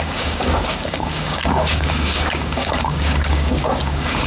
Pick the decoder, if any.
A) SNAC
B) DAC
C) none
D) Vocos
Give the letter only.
B